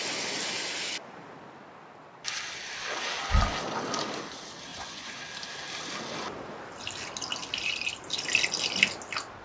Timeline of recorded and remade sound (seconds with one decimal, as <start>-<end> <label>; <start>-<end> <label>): 0.0-4.7 recorded; 4.7-5.2 remade; 5.2-9.4 recorded